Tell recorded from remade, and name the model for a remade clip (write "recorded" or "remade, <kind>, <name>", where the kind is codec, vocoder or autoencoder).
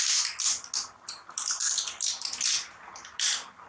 recorded